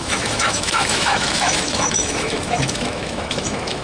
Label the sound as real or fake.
fake